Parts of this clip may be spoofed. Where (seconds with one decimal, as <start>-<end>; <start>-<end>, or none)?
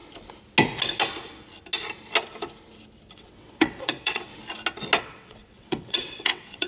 3.1-4.3; 5.0-6.7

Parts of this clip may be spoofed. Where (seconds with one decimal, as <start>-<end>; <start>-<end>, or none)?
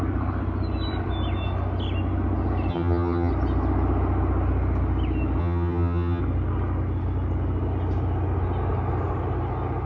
2.7-3.3; 5.4-6.2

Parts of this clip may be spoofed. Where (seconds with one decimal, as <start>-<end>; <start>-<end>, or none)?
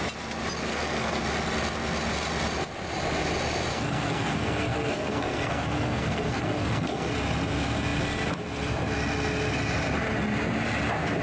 0.7-1.2; 3.7-7.1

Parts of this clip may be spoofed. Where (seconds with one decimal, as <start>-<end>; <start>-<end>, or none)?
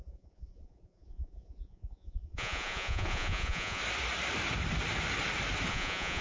0.0-3.8; 5.7-6.2